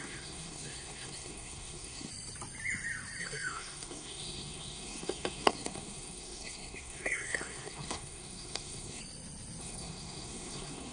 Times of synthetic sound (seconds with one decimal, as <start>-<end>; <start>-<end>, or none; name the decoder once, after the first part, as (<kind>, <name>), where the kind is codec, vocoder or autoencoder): 0.0-2.1 (codec, SNAC); 3.2-9.0; 9.6-10.9